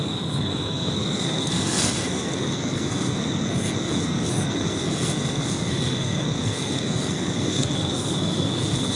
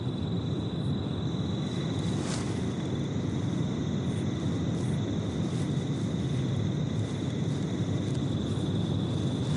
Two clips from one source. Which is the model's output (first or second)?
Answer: first